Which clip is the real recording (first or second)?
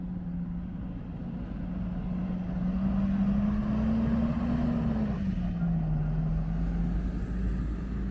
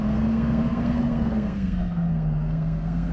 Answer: first